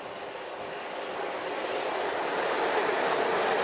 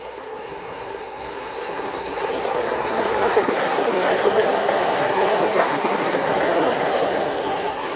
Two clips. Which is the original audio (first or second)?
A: first